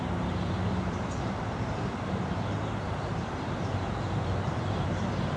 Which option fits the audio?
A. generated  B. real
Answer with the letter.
A